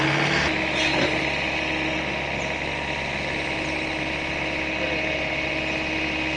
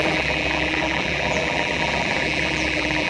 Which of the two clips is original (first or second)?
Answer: first